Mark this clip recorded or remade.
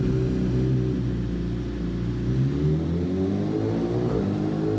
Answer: recorded